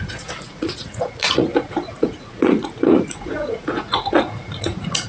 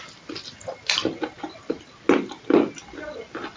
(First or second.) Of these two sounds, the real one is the second